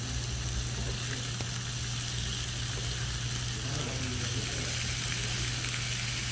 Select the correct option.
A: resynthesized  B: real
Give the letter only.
B